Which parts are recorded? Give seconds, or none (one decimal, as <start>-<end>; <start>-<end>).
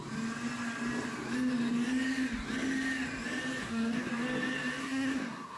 0.0-3.6; 4.1-4.8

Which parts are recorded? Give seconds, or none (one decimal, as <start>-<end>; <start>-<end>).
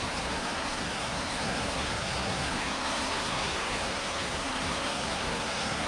none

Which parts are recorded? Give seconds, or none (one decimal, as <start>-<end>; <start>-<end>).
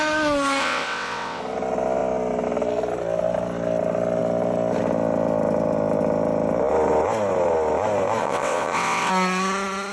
0.0-0.6; 1.4-8.2; 9.1-9.9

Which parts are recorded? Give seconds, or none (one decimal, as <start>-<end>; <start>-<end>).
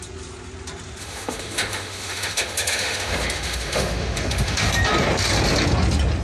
0.0-1.0; 4.7-6.2